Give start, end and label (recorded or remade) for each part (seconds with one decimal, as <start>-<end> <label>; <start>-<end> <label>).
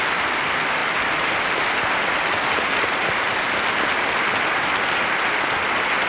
0.0-6.1 recorded